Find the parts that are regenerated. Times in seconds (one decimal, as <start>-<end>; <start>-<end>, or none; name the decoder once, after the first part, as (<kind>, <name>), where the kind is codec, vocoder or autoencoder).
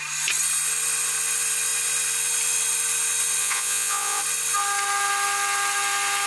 3.4-4.2 (vocoder, Vocos)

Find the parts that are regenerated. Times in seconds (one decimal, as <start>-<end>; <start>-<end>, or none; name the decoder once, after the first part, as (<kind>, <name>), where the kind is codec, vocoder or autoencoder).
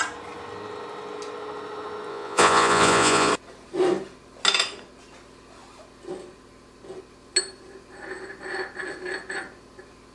2.1-3.3 (vocoder, Vocos)